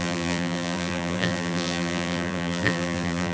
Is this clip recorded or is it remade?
remade